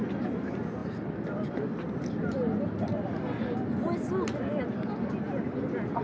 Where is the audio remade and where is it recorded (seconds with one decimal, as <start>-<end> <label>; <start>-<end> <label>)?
0.0-6.0 recorded